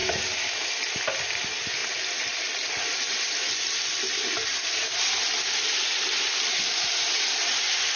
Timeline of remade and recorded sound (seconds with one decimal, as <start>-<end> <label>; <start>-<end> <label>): 0.0-8.0 recorded